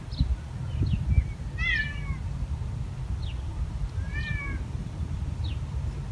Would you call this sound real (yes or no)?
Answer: yes